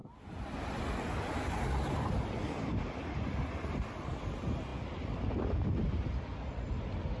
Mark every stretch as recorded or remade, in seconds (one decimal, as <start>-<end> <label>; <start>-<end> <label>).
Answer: 0.0-7.2 recorded